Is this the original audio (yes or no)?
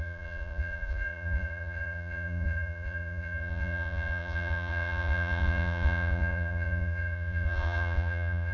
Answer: no